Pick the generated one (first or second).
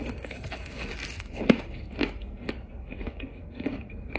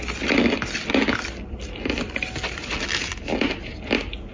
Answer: first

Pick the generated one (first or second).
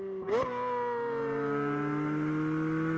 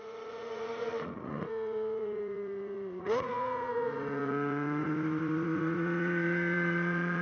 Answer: second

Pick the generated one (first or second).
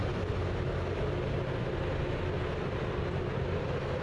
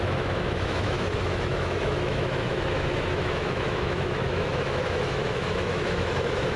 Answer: second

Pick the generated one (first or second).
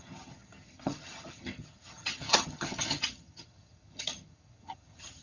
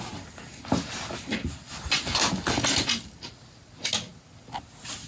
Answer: first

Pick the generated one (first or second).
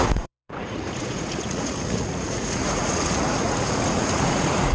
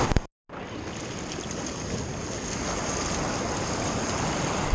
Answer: first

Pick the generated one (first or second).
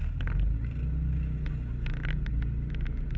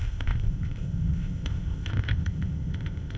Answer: second